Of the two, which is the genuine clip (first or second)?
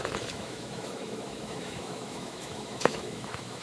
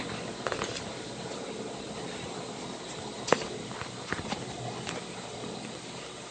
second